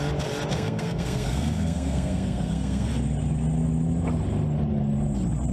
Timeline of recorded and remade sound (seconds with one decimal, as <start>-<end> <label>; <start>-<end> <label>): 0.0-0.5 recorded; 0.5-2.9 remade; 2.9-5.5 recorded